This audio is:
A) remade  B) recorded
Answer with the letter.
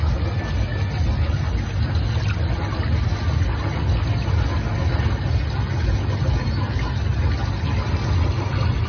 B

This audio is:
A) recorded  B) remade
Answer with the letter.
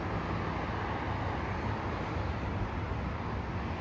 A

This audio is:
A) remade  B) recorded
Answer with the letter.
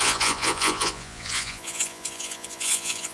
A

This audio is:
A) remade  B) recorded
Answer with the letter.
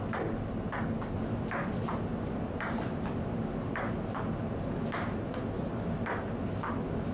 B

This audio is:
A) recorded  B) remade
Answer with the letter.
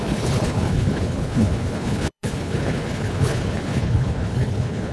B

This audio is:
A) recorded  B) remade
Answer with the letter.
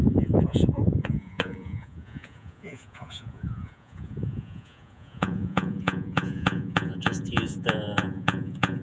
B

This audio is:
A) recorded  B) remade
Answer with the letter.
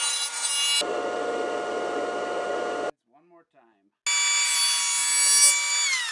A